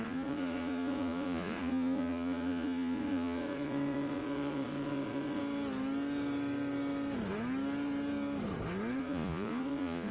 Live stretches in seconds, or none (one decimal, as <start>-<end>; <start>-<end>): 5.4-9.0